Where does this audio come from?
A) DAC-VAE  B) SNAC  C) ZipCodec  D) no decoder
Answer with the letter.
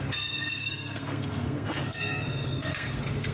B